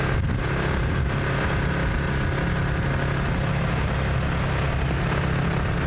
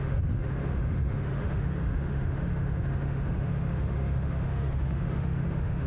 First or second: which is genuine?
first